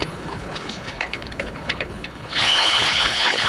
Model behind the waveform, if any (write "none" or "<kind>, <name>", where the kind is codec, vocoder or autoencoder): codec, HILCodec